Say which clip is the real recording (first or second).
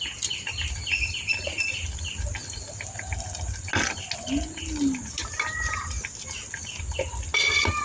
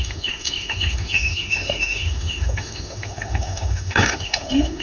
first